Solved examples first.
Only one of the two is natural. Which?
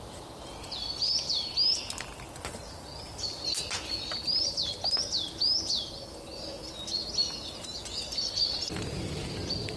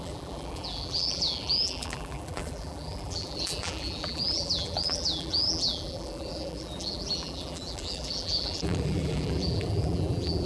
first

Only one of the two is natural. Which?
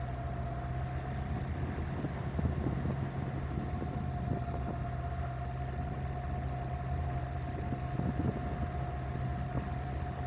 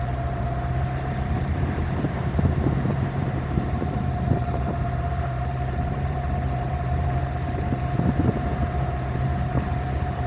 first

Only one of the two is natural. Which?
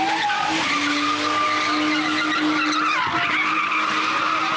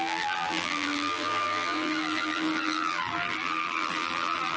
first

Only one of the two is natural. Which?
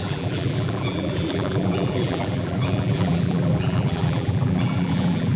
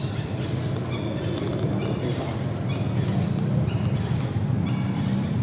second